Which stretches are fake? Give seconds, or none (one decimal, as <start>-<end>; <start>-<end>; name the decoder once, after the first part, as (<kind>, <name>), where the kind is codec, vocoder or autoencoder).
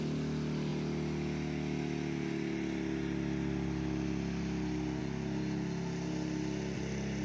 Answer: none